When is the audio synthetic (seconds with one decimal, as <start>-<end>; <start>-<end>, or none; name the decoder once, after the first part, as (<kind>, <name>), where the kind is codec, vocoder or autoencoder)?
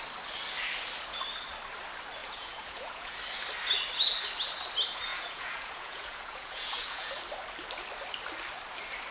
2.2-3.2 (vocoder, Vocos); 5.1-7.1